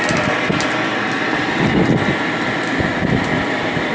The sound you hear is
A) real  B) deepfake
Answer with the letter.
A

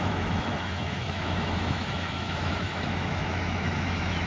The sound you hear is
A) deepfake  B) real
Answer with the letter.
A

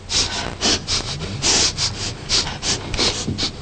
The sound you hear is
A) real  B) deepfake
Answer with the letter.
A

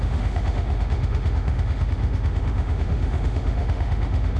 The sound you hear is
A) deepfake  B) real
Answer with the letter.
A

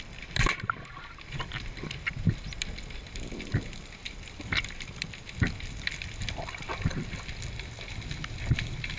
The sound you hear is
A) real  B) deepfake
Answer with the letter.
A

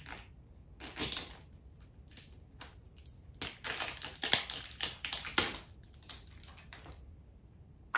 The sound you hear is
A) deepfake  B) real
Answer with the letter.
B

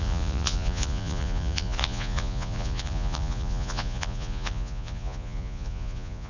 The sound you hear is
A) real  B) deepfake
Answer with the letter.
B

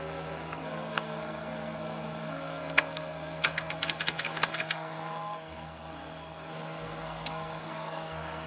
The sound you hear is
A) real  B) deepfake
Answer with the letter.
B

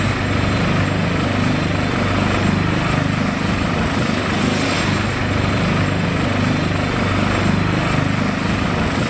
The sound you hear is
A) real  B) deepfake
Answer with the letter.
A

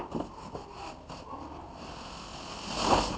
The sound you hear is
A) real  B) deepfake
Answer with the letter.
A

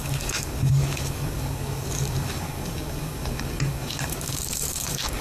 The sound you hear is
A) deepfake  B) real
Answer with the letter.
A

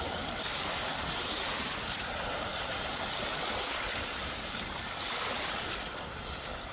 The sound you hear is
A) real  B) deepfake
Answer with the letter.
A